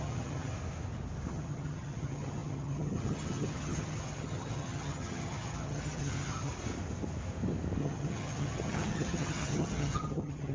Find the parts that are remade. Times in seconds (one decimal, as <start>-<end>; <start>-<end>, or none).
0.0-0.5; 1.3-6.5; 7.8-10.5